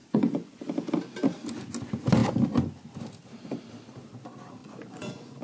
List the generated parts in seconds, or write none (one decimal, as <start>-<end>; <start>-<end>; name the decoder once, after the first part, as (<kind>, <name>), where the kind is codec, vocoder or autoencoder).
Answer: 0.0-0.6 (vocoder, Vocos); 4.6-5.4